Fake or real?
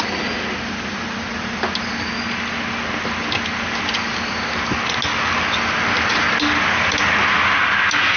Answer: real